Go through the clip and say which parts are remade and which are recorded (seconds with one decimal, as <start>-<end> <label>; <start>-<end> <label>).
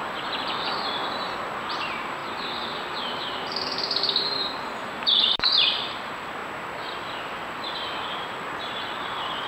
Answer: 0.0-1.0 remade; 1.0-1.7 recorded; 1.7-6.4 remade; 6.4-7.2 recorded; 7.2-9.5 remade